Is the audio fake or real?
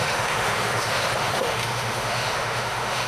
fake